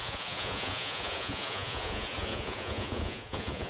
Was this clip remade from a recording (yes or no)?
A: yes